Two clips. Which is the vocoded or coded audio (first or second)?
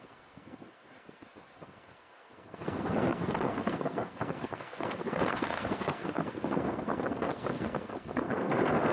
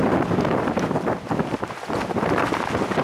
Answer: first